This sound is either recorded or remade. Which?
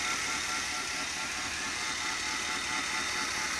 recorded